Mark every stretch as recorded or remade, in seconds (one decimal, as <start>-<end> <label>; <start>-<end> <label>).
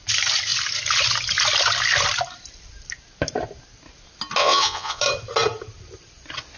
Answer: 0.0-4.4 recorded; 4.4-5.0 remade; 5.0-6.6 recorded